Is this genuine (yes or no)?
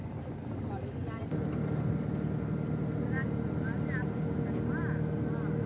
yes